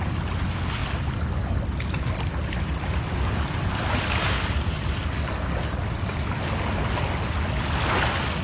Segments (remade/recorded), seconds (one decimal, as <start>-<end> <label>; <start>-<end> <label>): 0.0-8.4 recorded